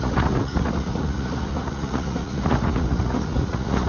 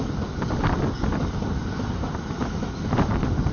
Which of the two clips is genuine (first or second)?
second